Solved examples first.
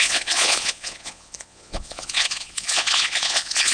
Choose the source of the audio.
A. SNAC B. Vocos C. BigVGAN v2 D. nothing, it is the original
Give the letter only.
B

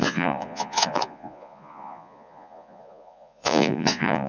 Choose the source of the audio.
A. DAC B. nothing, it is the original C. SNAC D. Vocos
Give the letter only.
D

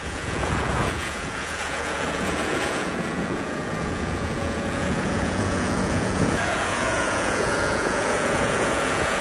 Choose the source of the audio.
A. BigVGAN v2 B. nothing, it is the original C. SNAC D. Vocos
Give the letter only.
D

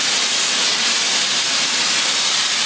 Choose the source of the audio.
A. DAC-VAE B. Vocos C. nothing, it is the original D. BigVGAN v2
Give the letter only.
C